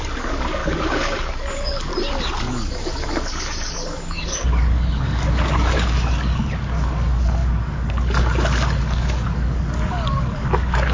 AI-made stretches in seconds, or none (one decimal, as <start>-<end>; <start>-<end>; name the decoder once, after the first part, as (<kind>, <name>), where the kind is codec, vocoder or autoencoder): 0.0-1.9 (codec, DAC); 2.4-10.9